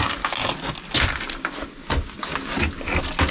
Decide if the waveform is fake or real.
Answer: real